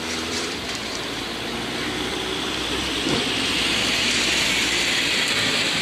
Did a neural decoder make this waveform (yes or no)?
yes